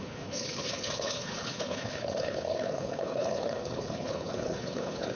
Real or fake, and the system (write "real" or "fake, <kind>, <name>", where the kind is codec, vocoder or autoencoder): fake, codec, HILCodec